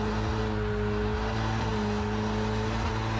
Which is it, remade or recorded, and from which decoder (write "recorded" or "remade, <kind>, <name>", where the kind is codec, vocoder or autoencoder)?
recorded